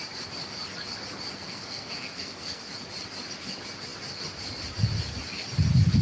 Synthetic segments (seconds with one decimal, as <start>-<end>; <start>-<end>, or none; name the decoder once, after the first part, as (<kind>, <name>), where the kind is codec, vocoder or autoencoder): 1.3-2.6 (codec, SNAC)